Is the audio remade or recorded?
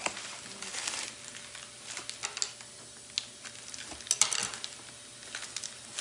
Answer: recorded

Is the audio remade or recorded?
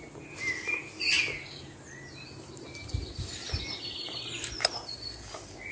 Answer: recorded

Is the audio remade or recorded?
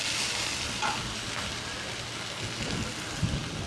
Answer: recorded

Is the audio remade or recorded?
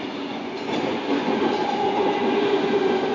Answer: remade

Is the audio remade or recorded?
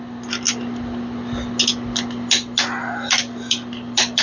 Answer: recorded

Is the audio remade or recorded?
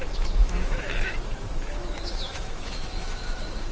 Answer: remade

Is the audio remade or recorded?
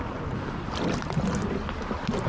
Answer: recorded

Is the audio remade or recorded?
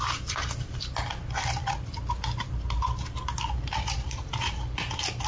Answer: recorded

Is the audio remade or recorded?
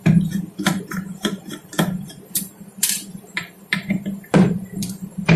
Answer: remade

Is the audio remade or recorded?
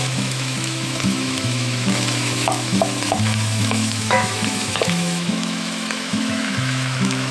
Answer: remade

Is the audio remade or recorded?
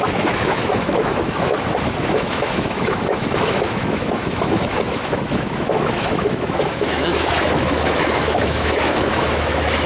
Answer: remade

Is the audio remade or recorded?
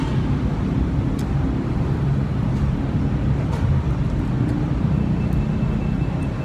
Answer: recorded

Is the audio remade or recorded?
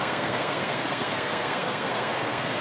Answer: remade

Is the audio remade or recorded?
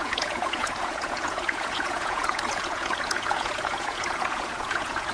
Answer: remade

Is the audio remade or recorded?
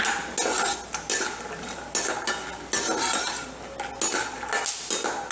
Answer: recorded